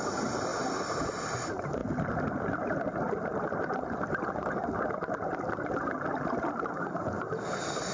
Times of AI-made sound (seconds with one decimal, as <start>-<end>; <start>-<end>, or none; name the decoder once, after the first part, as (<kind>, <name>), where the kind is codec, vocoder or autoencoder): 0.0-1.8 (vocoder, BigVGAN v2); 6.5-7.9